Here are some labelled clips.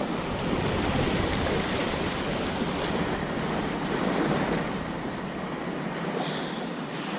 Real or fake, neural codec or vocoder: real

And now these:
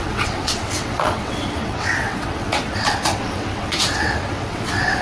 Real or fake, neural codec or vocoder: fake, vocoder, WaveNeXt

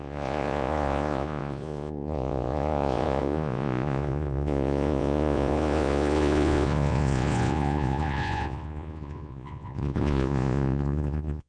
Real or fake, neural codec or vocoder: fake, vocoder, Vocos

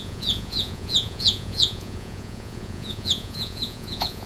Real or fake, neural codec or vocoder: fake, vocoder, Vocos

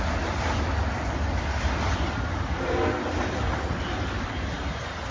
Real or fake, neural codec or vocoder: real